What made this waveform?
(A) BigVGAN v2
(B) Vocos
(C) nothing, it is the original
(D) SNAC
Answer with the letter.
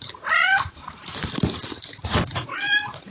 A